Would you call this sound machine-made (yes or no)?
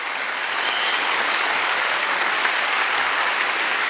yes